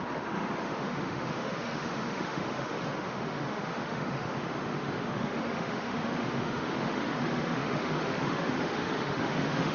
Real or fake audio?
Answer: fake